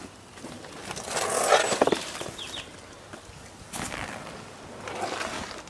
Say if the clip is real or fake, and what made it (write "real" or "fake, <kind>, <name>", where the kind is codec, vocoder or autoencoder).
real